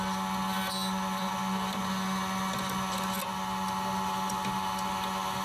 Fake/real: real